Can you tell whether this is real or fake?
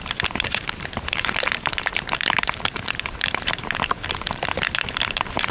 fake